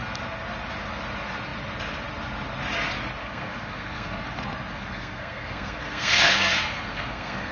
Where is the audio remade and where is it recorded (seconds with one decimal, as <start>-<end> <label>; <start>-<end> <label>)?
0.0-3.2 recorded; 3.2-4.2 remade; 4.2-4.7 recorded; 4.7-7.5 remade